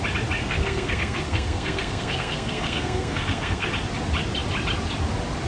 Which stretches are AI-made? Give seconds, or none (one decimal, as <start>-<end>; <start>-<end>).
0.4-3.7